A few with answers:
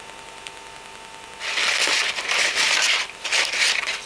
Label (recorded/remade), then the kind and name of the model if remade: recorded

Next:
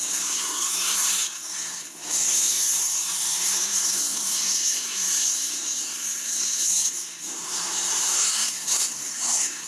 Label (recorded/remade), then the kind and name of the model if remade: remade, codec, SNAC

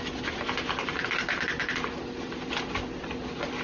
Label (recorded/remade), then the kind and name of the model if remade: recorded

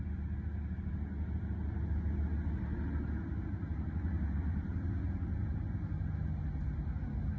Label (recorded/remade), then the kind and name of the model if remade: recorded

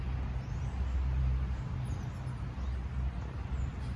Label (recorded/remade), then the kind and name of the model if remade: recorded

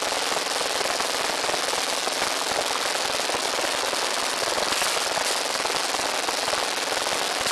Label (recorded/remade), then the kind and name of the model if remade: recorded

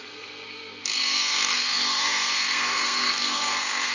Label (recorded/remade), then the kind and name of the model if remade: remade, codec, SNAC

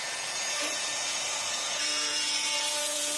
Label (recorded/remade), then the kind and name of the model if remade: remade, vocoder, Vocos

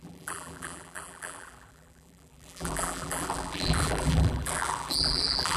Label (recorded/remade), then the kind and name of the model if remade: remade, vocoder, BigVGAN v2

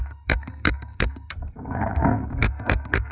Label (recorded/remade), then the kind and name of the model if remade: remade, codec, SNAC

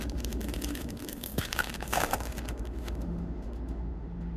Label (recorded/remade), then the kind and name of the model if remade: remade, autoencoder, DAC-VAE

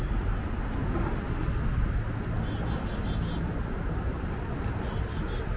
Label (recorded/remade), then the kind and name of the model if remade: recorded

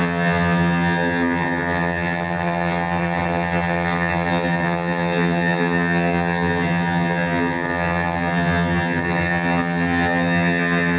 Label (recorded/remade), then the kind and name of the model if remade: remade, vocoder, HiFi-GAN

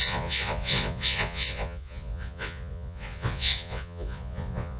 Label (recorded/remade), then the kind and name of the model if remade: remade, vocoder, Vocos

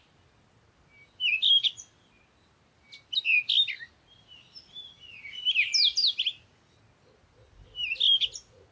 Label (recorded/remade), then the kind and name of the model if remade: recorded